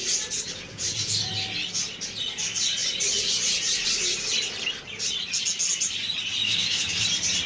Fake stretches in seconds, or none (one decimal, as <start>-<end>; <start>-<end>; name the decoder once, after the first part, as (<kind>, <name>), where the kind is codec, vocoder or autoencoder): 6.4-7.0 (codec, DAC)